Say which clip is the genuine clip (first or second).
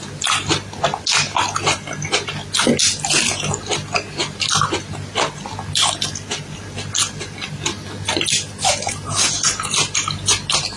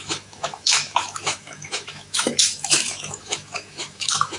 first